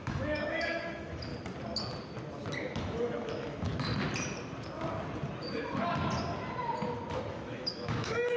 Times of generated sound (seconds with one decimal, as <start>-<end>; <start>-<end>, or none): 0.0-1.3; 2.8-3.7; 7.3-8.4